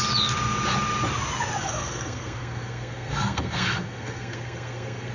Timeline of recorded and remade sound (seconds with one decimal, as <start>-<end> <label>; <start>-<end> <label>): 0.0-1.6 recorded; 1.6-5.1 remade